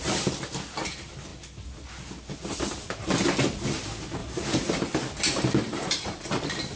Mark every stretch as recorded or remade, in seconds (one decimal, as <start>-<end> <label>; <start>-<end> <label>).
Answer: 0.0-4.2 recorded; 4.2-4.7 remade; 4.7-5.6 recorded; 5.6-6.3 remade; 6.3-6.8 recorded